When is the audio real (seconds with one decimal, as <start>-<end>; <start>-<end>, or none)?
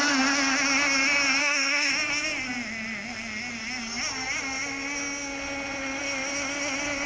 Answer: 0.0-1.4; 1.9-7.1